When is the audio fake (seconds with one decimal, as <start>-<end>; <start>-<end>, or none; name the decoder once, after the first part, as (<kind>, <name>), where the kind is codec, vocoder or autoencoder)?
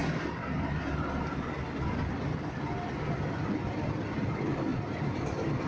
none